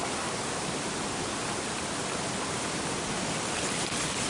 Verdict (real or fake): real